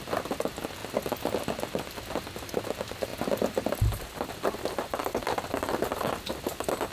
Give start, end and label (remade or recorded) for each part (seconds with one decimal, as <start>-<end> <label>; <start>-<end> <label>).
0.0-6.9 recorded